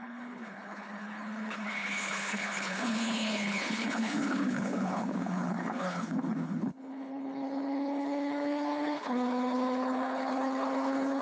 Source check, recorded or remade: remade